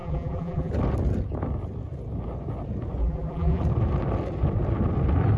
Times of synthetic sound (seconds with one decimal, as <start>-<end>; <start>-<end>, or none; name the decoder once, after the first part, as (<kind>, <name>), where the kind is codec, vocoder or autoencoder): 0.0-0.7 (vocoder, BigVGAN v2); 3.0-3.6